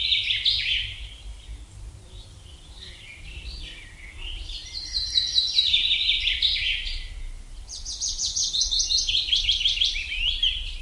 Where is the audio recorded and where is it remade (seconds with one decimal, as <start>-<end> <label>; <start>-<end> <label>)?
0.0-10.8 recorded